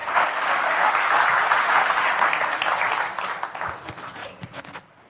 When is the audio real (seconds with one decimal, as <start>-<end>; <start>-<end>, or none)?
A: 0.9-1.6; 2.3-5.1